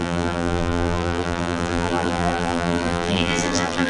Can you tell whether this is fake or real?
fake